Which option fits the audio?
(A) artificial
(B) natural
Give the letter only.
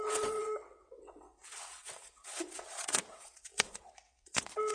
A